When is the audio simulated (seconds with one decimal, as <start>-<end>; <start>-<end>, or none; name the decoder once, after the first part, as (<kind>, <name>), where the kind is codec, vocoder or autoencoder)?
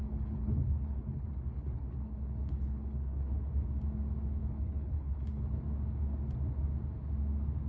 0.0-3.5 (codec, HILCodec); 4.4-5.6